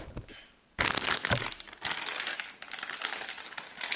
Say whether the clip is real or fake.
real